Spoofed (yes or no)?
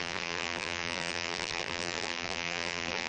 yes